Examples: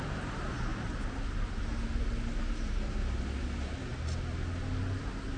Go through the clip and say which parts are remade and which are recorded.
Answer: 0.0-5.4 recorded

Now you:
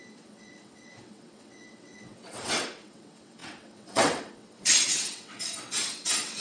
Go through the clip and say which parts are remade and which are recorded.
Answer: 0.0-6.4 remade

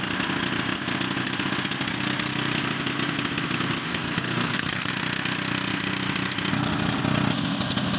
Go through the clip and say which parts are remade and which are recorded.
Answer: 0.0-3.9 recorded; 3.9-4.9 remade; 4.9-8.0 recorded

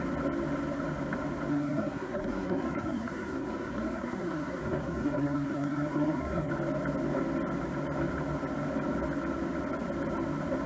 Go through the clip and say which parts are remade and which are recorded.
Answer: 0.0-1.5 recorded; 1.5-6.5 remade; 6.5-10.7 recorded